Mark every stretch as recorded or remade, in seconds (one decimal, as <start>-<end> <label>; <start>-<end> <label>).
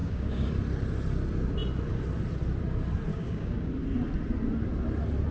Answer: 0.0-0.5 remade; 0.5-3.1 recorded; 3.1-3.7 remade; 3.7-5.3 recorded